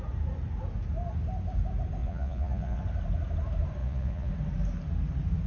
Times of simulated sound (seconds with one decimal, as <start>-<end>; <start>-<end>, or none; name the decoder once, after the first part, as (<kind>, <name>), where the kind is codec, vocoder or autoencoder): 2.0-2.8 (vocoder, Vocos); 3.8-4.3

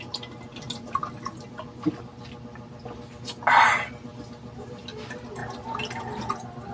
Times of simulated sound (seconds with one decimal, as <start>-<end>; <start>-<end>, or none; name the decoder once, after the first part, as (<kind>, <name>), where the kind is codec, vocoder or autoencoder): none

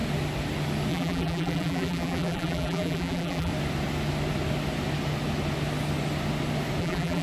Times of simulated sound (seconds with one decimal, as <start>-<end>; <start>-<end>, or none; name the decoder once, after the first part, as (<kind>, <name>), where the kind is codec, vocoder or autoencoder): 0.9-3.5 (vocoder, BigVGAN v2); 6.8-7.2

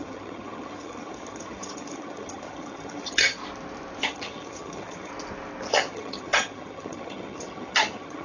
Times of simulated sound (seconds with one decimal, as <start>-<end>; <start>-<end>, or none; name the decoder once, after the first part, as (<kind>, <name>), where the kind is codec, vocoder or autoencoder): 0.0-3.4 (vocoder, HiFi-GAN); 4.0-5.1; 5.7-8.2

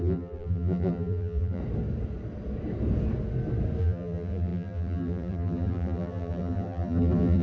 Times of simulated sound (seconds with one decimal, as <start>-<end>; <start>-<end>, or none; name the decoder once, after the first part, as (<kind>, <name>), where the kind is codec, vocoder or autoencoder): 0.0-1.6 (vocoder, BigVGAN v2); 3.8-7.4

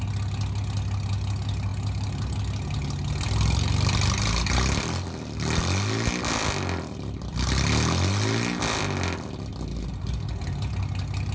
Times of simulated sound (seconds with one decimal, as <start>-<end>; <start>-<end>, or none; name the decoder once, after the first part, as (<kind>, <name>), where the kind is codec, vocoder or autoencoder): none